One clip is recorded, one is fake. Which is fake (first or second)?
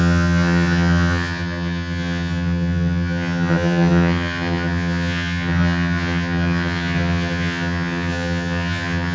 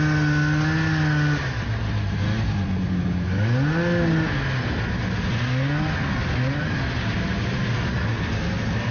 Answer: first